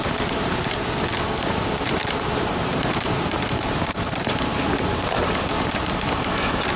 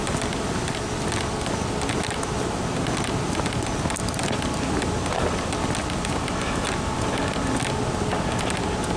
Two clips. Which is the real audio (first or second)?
second